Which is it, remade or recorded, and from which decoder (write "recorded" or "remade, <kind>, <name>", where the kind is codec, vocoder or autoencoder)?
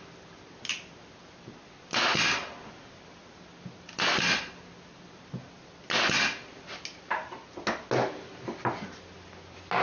recorded